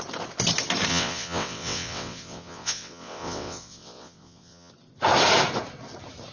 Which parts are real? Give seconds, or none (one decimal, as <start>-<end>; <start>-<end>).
0.0-0.9; 4.7-6.3